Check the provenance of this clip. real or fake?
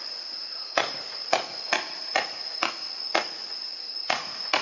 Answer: fake